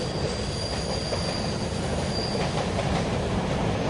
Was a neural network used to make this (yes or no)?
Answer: yes